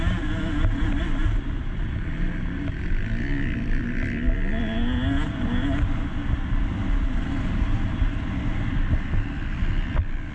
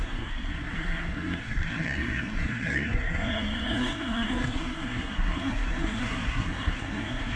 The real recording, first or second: first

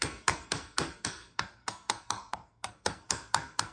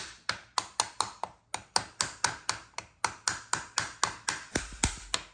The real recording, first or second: second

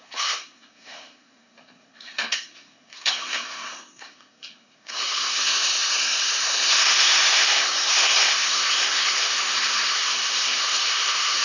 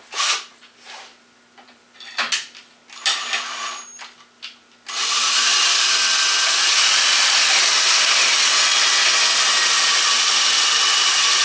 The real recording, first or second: second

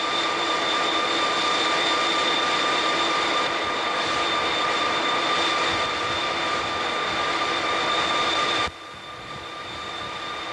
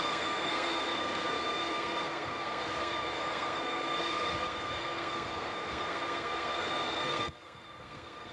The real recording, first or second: first